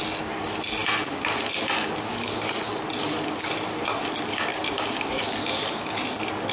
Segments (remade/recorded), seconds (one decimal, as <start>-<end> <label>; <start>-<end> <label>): 0.0-4.5 recorded; 4.5-5.2 remade; 5.2-6.5 recorded